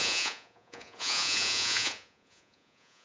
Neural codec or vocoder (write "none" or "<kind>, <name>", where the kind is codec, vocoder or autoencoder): vocoder, Vocos